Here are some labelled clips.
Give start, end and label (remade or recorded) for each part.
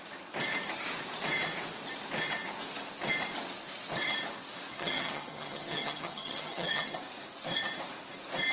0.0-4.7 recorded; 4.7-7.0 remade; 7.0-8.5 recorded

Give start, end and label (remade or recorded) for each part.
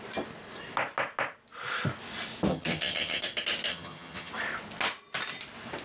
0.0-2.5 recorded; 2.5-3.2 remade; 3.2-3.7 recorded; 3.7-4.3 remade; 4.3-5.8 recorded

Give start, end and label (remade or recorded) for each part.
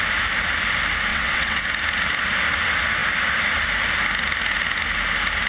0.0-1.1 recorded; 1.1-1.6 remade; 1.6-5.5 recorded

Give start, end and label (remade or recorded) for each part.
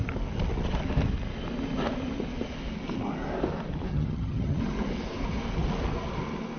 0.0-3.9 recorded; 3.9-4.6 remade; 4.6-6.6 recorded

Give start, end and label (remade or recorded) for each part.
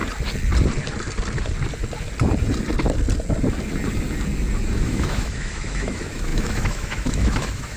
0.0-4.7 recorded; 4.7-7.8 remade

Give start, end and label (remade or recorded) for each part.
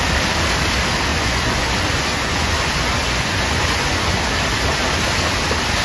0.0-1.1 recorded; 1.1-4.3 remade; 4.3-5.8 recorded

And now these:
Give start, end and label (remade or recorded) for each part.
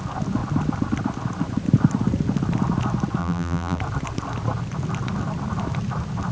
0.0-3.2 recorded; 3.2-3.8 remade; 3.8-6.3 recorded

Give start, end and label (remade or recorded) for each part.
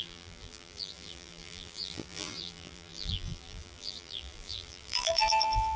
0.0-5.8 remade